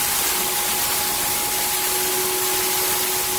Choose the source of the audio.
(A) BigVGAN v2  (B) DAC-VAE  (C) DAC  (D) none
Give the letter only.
D